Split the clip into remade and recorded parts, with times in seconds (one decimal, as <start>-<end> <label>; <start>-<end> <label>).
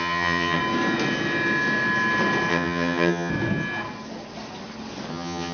0.0-0.6 remade; 0.6-2.5 recorded; 2.5-3.3 remade; 3.3-5.1 recorded; 5.1-5.5 remade